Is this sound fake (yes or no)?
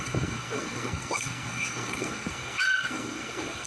yes